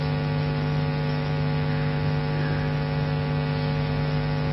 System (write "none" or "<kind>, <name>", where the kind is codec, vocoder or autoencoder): none